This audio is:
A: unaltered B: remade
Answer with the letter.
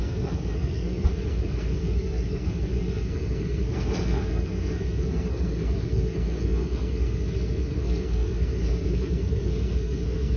B